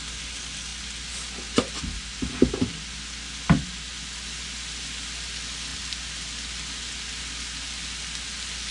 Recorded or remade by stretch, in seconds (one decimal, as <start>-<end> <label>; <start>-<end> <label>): 0.0-8.7 recorded